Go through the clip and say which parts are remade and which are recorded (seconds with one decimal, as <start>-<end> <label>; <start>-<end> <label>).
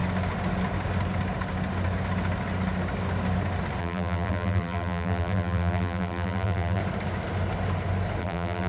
0.0-3.8 recorded; 3.8-6.8 remade; 6.8-8.2 recorded; 8.2-8.7 remade